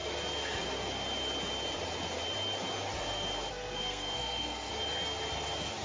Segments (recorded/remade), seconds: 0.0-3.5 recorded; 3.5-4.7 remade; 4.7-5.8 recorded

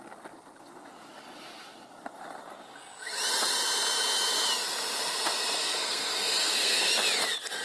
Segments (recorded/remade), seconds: 0.0-5.6 recorded; 5.6-6.9 remade; 6.9-7.6 recorded

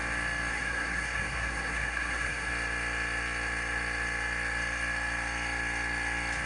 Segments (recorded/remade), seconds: 0.0-0.5 recorded; 0.5-2.5 remade; 2.5-6.5 recorded

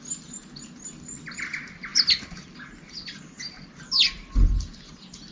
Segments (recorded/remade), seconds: 0.0-5.3 recorded